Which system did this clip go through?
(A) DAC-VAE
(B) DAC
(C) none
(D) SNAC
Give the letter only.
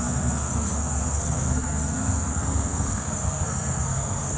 D